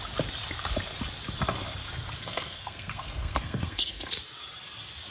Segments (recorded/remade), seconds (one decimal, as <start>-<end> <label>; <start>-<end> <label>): 0.0-2.2 recorded; 2.2-4.1 remade; 4.1-5.1 recorded